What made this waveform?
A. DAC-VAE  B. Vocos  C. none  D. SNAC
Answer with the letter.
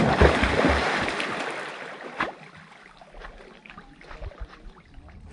C